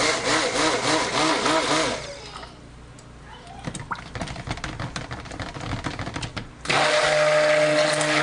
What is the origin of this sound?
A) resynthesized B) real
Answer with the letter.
B